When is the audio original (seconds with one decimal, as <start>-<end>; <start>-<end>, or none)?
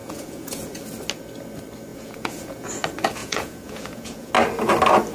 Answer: 0.8-1.9; 2.7-3.2; 4.3-5.1